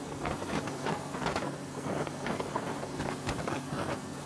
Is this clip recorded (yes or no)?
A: no